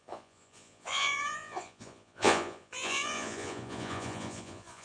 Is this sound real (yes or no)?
no